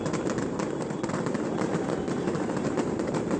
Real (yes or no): yes